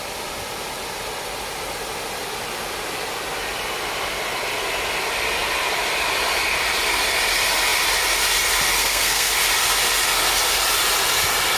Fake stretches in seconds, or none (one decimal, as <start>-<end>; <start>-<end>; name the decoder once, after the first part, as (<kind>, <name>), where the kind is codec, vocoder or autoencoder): 8.8-9.3 (codec, SNAC)

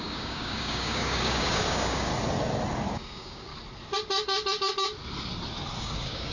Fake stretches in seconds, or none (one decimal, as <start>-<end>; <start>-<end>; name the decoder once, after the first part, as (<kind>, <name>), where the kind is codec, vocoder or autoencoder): 0.0-2.1 (codec, DAC); 2.9-3.5; 5.8-6.3

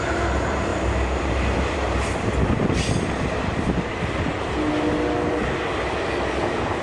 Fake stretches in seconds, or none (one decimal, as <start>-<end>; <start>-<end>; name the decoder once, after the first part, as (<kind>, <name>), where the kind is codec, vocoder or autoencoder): 0.7-4.7 (vocoder, BigVGAN v2)

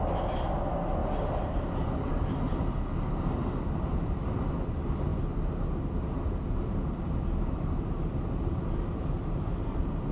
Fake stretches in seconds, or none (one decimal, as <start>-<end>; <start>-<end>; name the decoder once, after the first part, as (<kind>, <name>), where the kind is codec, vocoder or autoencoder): none

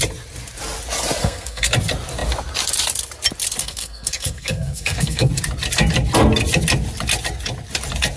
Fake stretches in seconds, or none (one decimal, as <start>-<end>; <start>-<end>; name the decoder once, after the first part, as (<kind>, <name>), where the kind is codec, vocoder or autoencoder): 1.2-1.7 (codec, SNAC); 3.6-5.3

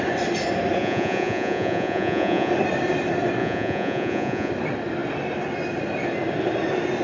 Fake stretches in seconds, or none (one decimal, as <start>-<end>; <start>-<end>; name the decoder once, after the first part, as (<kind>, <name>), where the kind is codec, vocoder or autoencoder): 0.8-2.5 (vocoder, Vocos); 3.4-4.5

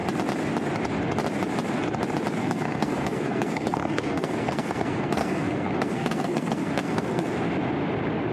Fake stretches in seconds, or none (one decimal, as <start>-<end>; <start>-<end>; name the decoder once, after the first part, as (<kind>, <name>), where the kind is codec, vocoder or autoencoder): 2.4-7.3 (codec, SNAC)